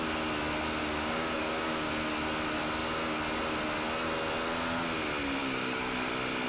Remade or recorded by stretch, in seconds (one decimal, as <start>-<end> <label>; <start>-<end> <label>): 0.0-0.8 recorded; 0.8-1.9 remade; 1.9-5.4 recorded; 5.4-6.1 remade; 6.1-6.5 recorded